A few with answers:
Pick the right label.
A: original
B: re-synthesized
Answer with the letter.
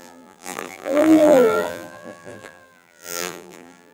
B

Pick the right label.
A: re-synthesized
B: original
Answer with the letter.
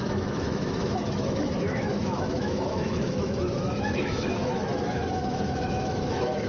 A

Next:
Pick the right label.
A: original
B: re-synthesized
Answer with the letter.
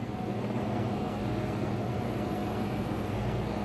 B